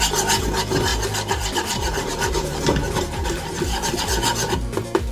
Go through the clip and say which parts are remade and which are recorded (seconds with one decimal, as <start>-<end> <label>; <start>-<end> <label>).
0.0-0.9 recorded; 0.9-4.0 remade; 4.0-5.1 recorded